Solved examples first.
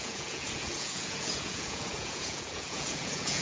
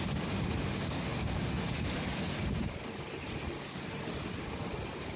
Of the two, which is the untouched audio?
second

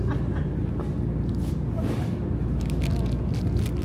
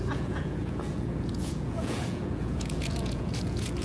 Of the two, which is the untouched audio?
first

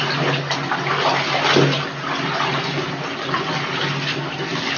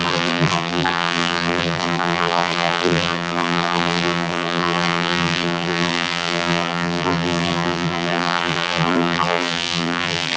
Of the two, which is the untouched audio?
first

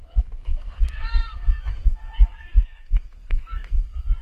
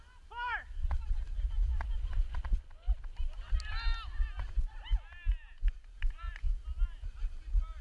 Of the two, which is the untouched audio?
second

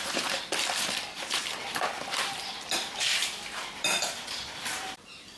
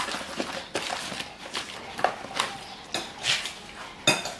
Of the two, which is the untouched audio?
second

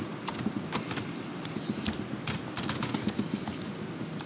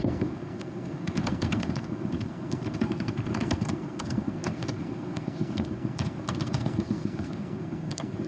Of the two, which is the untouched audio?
first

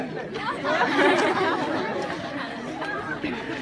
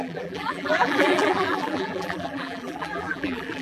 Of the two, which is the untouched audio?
first